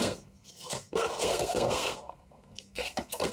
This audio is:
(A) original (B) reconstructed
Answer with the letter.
B